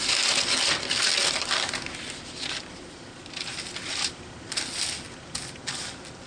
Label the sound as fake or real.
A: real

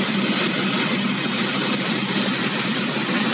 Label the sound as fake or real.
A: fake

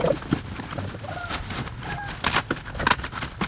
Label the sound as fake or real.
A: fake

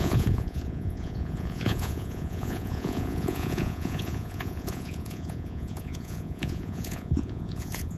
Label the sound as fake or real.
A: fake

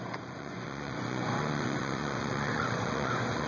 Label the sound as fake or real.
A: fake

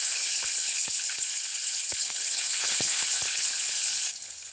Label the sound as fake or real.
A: fake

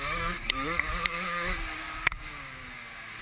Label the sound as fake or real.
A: fake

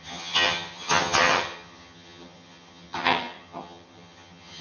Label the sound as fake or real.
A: fake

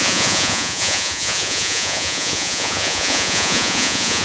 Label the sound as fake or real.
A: fake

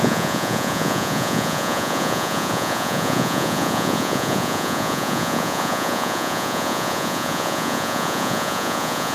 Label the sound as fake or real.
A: fake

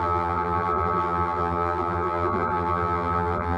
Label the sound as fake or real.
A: fake